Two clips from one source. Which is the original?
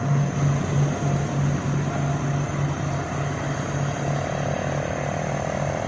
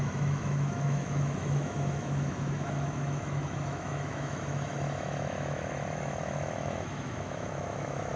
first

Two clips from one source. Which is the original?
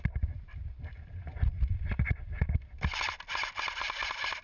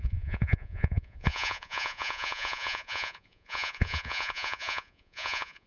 first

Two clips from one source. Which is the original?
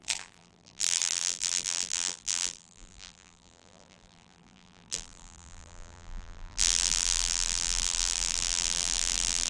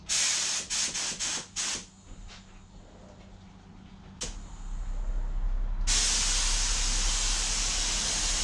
second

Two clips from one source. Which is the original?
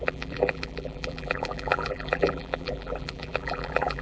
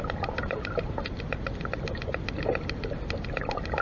second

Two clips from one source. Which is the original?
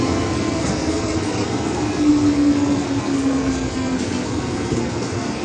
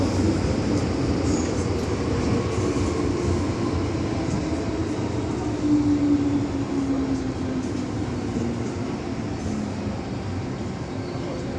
second